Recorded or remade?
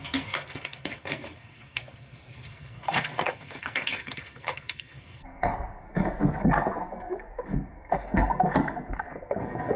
remade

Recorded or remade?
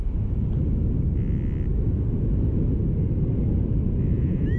recorded